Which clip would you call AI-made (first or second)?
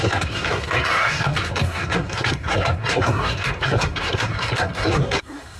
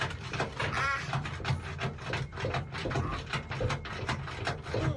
first